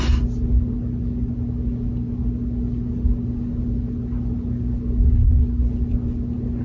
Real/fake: real